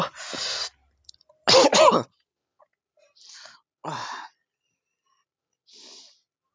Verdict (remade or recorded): recorded